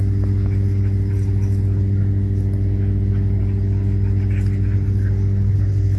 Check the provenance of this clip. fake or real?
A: real